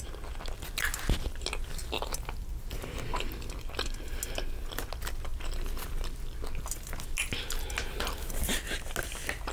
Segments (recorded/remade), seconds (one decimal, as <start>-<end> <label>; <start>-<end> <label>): 0.0-9.5 recorded